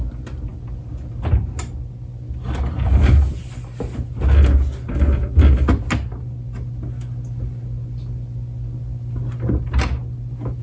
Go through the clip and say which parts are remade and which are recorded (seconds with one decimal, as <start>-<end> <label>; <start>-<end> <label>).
0.0-10.6 recorded